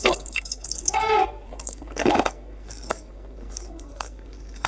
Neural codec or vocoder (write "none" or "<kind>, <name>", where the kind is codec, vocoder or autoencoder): codec, SNAC